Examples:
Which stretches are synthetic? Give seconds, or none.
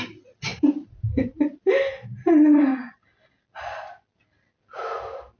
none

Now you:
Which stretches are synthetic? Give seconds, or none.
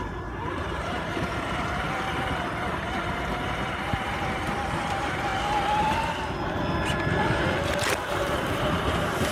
0.0-5.3 (vocoder, BigVGAN v2); 8.1-9.3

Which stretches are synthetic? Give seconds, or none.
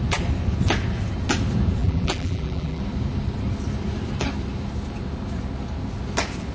1.8-2.8 (vocoder, BigVGAN v2)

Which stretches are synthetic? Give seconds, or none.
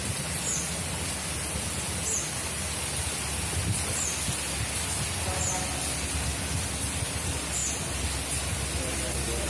none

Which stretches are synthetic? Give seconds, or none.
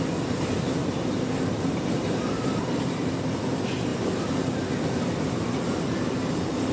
0.8-2.9 (vocoder, BigVGAN v2)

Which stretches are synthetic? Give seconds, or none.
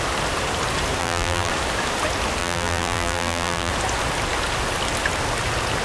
1.0-1.5 (vocoder, BigVGAN v2); 2.4-3.7